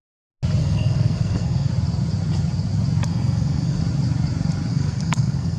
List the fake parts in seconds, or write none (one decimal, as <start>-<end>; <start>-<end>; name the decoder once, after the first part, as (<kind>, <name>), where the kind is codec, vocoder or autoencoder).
0.6-1.7 (codec, SNAC); 3.1-3.8; 4.7-5.6